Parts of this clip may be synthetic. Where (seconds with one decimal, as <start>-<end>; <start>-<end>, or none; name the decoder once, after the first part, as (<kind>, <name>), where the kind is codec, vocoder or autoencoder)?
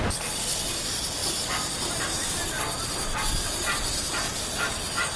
none